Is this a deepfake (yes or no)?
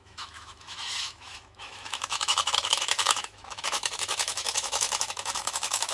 yes